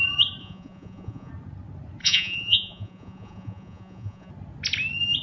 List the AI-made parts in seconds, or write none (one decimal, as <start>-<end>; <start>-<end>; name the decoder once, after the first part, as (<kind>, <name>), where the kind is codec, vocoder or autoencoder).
0.4-1.3 (vocoder, Vocos); 2.0-4.3